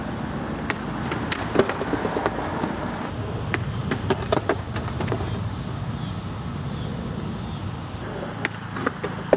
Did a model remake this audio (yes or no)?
no